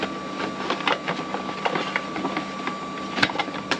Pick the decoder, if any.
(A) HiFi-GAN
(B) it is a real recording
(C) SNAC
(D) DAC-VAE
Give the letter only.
B